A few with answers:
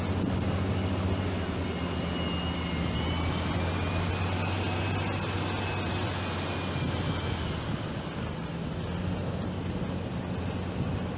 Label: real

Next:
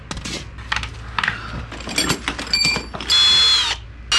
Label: real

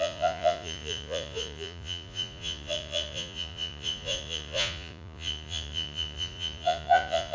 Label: fake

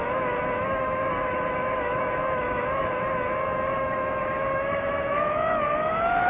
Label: fake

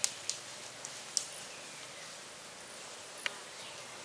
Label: real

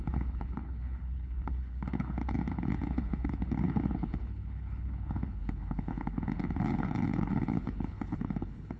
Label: fake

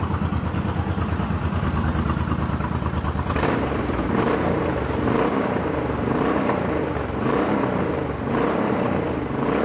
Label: fake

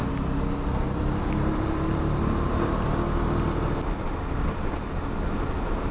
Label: real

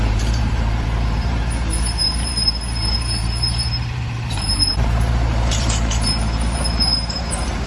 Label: fake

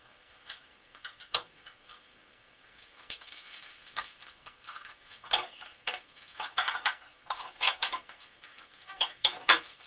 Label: fake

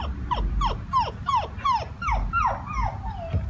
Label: real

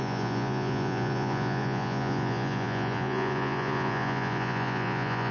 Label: fake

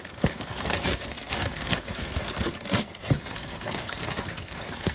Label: fake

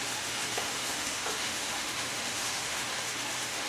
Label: fake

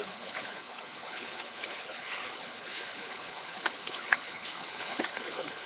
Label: fake